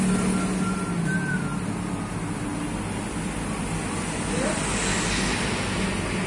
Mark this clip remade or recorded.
recorded